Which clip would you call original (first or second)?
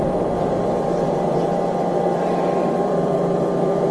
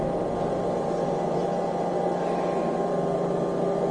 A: second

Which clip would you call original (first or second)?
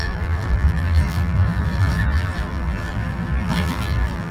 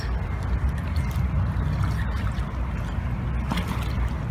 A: second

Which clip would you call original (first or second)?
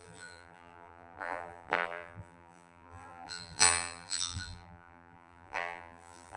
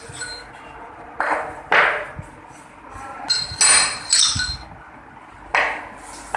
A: second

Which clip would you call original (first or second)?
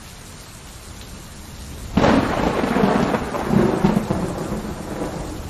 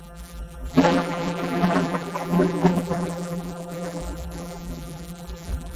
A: first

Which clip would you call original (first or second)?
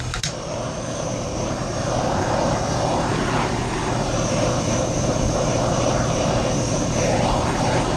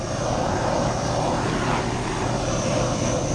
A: second